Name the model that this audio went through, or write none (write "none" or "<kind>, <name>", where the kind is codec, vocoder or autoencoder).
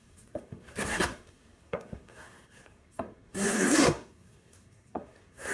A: codec, SNAC